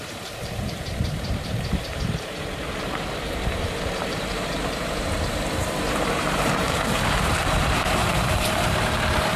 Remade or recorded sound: remade